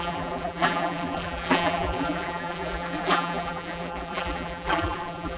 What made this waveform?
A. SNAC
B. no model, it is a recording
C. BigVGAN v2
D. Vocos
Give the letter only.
C